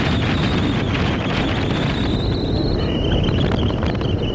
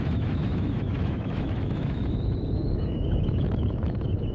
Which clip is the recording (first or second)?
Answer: first